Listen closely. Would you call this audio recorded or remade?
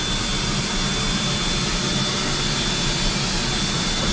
recorded